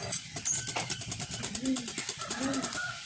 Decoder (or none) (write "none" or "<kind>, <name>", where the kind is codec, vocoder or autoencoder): none